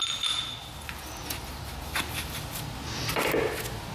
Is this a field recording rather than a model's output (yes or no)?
yes